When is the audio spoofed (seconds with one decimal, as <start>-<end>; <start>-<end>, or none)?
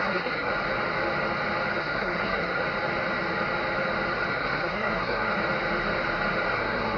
0.0-0.5; 1.8-2.6; 4.3-5.3; 6.5-7.0